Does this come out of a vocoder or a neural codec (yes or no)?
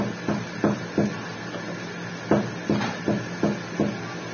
no